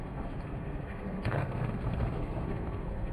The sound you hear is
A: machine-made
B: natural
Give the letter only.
A